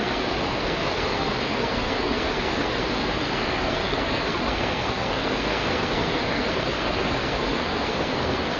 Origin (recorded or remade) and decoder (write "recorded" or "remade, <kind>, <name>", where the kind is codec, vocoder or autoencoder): remade, codec, SNAC